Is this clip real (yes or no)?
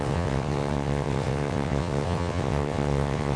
no